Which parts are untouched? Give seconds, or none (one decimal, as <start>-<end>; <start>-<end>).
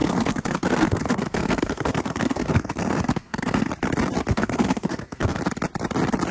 3.7-4.3; 5.4-6.3